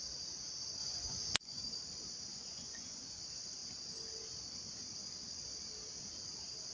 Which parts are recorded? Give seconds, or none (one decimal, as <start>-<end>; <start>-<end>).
0.0-0.8; 1.6-2.3; 3.2-6.7